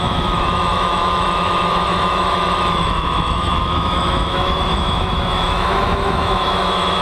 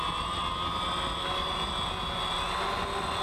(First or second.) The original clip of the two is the second